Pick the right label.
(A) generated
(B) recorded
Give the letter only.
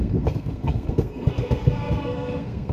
A